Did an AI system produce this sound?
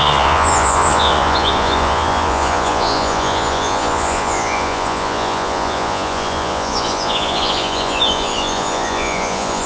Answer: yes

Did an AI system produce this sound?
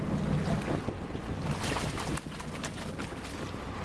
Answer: no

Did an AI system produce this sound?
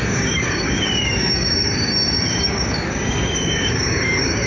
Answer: yes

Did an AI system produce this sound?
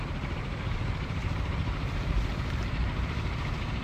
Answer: yes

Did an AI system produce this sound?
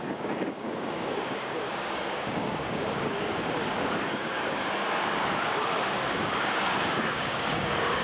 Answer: yes